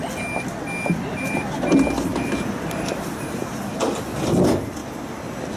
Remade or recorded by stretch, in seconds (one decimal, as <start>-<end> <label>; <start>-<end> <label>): 0.0-2.1 recorded; 2.1-3.2 remade; 3.2-5.6 recorded